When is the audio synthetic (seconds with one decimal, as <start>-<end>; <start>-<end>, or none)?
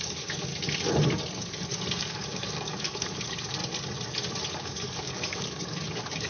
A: 0.0-0.5; 2.0-3.6; 4.5-6.3